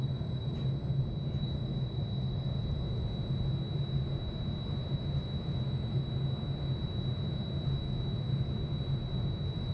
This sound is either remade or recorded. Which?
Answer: recorded